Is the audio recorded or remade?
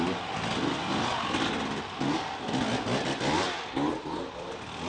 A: recorded